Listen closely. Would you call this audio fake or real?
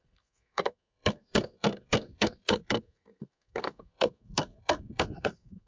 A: fake